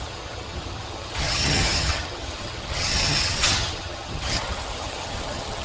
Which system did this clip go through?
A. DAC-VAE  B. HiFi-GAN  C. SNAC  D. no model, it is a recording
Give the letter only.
B